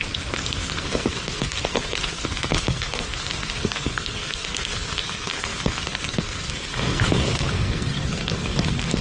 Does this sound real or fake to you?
fake